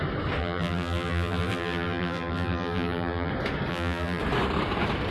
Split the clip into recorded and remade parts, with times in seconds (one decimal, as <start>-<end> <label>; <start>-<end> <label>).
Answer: 0.0-0.4 recorded; 0.4-3.3 remade; 3.3-3.7 recorded; 3.7-4.2 remade; 4.2-5.1 recorded